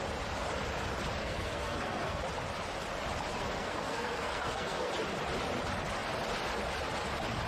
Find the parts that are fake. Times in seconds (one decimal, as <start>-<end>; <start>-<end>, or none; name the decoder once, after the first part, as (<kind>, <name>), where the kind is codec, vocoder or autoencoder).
1.2-2.2 (codec, SNAC); 3.3-4.9